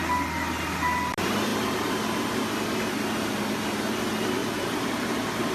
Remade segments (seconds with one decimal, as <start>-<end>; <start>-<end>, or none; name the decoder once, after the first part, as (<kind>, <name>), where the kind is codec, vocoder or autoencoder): 4.4-5.5 (vocoder, BigVGAN v2)